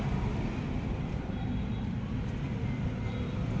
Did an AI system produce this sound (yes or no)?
yes